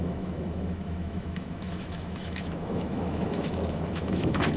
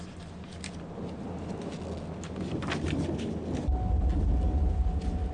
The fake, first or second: first